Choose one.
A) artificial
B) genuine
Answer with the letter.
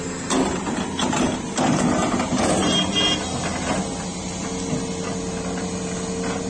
B